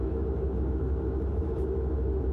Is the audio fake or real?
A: fake